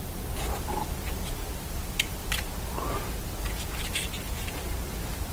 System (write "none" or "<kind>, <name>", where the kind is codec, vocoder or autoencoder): none